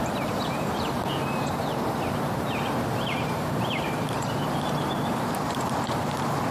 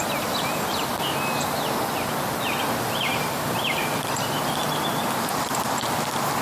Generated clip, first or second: first